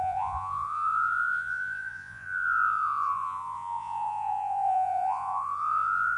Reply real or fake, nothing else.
fake